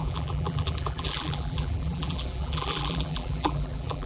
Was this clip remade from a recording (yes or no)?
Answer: yes